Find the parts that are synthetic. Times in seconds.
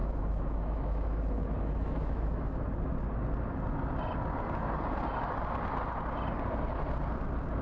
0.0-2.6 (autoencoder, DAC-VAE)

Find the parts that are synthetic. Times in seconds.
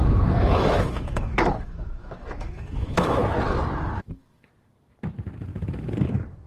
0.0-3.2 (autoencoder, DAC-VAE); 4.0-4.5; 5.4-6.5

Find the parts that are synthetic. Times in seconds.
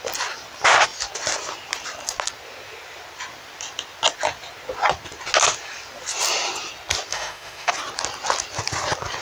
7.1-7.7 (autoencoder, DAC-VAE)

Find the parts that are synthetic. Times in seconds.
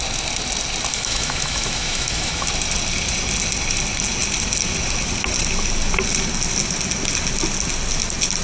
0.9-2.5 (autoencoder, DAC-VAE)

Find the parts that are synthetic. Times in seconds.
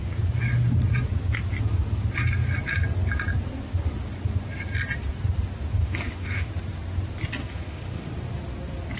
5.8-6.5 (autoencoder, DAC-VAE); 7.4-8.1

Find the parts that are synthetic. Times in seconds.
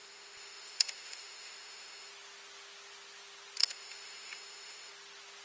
0.0-2.1 (autoencoder, DAC-VAE); 3.6-4.9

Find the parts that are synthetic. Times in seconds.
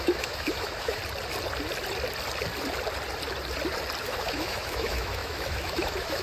0.0-1.0 (autoencoder, DAC-VAE); 4.0-6.2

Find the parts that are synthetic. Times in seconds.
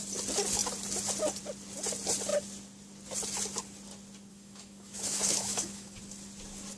4.3-6.0 (autoencoder, DAC-VAE)